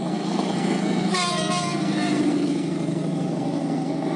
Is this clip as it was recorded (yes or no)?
no